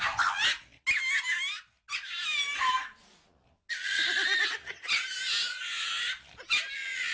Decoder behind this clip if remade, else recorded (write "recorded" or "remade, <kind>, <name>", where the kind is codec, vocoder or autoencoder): recorded